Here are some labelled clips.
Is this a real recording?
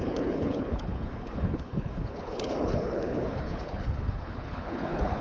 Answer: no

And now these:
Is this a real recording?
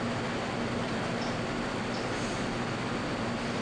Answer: yes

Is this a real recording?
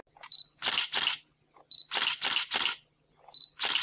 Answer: yes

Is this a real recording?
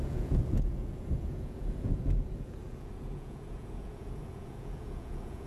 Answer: no